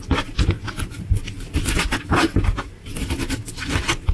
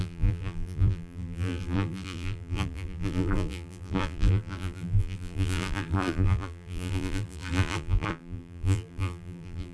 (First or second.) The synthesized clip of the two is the second